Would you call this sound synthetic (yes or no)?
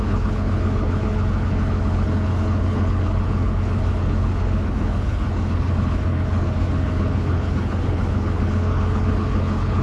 yes